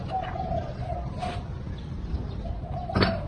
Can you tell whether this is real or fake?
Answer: real